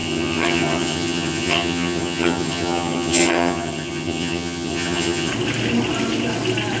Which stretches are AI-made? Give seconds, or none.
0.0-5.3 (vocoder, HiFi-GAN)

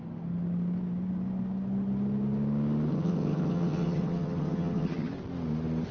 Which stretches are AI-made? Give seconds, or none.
2.9-5.1 (vocoder, HiFi-GAN)

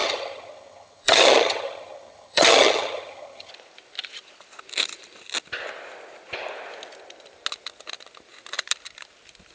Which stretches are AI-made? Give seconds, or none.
0.0-3.5 (vocoder, HiFi-GAN)

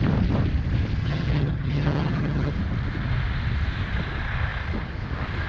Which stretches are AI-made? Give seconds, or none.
1.0-2.5 (vocoder, HiFi-GAN)

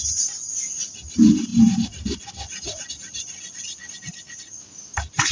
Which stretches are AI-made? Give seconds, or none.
none

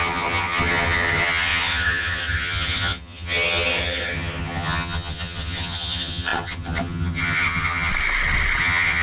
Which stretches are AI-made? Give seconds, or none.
0.0-7.9 (vocoder, HiFi-GAN); 8.6-9.0